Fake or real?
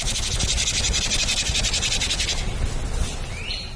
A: real